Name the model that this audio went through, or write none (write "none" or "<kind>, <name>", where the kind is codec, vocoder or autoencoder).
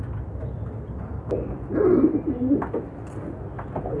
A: none